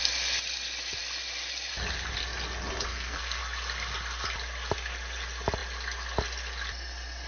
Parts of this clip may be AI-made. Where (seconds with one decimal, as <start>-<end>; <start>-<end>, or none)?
2.9-3.4

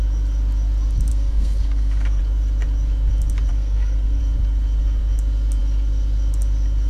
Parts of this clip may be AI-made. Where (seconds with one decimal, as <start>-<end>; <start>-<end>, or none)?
1.1-2.2; 3.5-4.2